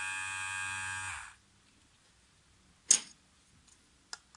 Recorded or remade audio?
recorded